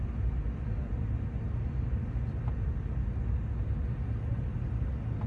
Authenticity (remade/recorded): recorded